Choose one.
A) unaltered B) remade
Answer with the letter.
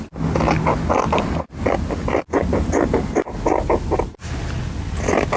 A